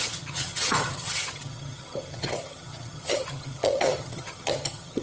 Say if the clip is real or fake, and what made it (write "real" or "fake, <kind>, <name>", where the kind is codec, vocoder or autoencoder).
fake, vocoder, HiFi-GAN